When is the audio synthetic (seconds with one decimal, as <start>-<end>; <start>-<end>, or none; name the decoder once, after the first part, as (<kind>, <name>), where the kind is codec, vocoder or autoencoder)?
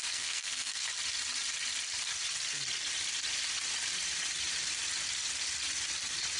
0.0-0.9 (codec, SNAC)